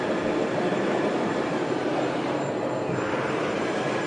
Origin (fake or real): fake